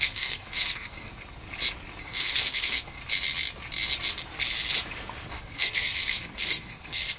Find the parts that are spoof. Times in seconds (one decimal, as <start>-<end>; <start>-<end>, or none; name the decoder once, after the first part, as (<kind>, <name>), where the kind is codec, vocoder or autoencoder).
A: 0.0-1.1 (codec, SNAC); 2.0-3.0; 5.3-7.2